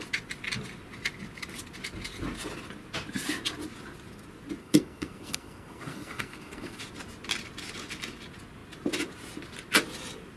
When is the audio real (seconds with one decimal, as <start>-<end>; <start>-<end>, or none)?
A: 0.0-4.6; 6.8-10.4